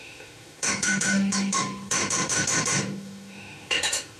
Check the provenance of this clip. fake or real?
fake